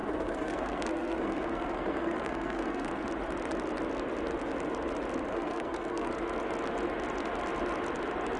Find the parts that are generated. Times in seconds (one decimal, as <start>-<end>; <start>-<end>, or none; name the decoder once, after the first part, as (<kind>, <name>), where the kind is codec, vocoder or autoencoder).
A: 0.0-3.0 (codec, SNAC); 5.3-6.1